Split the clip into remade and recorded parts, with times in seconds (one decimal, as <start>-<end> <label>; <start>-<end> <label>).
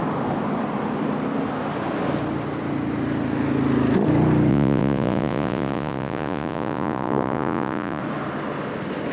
0.0-4.5 recorded; 4.5-8.0 remade; 8.0-9.1 recorded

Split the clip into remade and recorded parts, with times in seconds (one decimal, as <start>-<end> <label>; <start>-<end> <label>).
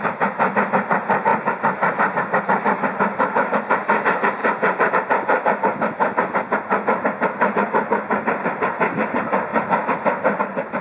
0.0-1.3 remade; 1.3-2.4 recorded; 2.4-4.4 remade; 4.4-4.9 recorded; 4.9-5.7 remade; 5.7-7.5 recorded; 7.5-9.5 remade; 9.5-10.4 recorded; 10.4-10.8 remade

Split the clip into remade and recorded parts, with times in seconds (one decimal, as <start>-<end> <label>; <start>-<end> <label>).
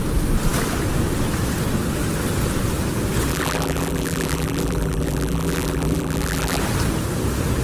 0.0-3.3 recorded; 3.3-6.6 remade; 6.6-7.6 recorded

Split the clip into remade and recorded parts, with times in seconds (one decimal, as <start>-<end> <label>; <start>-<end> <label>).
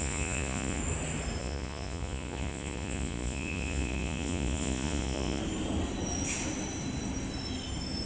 0.0-0.8 remade; 0.8-1.4 recorded; 1.4-5.4 remade; 5.4-8.1 recorded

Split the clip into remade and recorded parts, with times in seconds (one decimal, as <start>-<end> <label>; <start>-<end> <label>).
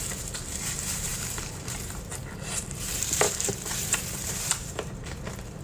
0.0-5.6 remade